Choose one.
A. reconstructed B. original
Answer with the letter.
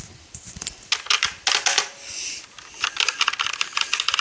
B